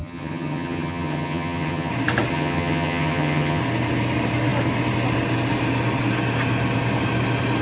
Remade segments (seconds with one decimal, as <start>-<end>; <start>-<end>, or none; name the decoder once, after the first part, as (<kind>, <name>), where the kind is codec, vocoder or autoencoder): 0.0-1.9 (vocoder, HiFi-GAN); 2.3-3.6